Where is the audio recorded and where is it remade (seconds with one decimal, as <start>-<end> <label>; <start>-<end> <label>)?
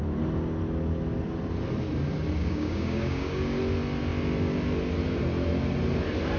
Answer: 0.0-2.4 recorded; 2.4-3.6 remade; 3.6-6.4 recorded